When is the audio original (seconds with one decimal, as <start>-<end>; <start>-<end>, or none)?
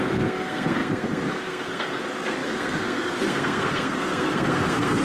none